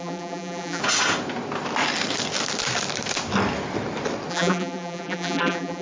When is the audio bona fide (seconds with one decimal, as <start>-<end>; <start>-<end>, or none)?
0.8-4.3